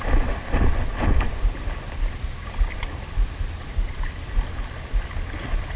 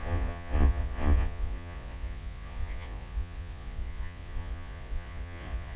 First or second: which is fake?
second